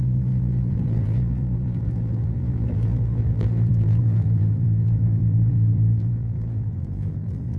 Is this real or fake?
fake